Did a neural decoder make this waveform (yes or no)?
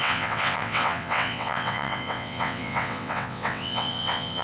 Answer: yes